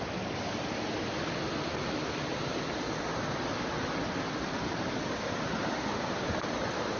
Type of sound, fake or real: real